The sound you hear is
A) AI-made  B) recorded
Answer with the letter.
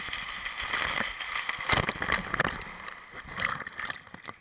B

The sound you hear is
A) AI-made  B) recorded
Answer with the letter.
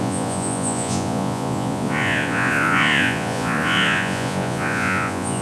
A